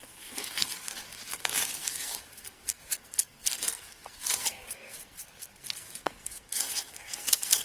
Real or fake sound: fake